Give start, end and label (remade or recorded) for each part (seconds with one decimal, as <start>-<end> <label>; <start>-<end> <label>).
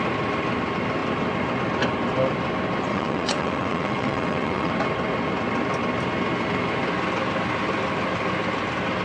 0.0-2.9 recorded; 2.9-4.7 remade; 4.7-9.0 recorded